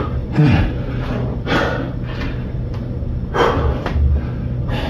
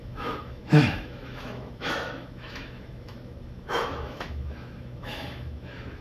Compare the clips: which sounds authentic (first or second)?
first